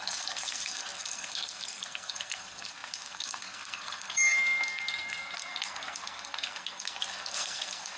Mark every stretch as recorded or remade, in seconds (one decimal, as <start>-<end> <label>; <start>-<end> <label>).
0.0-8.0 remade